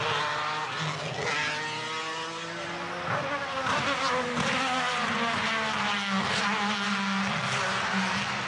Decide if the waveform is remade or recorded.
recorded